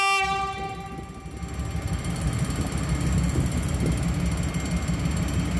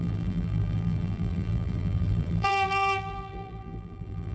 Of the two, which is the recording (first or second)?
first